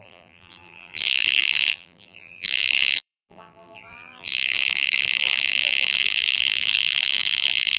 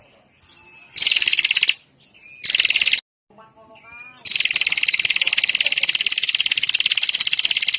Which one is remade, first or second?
first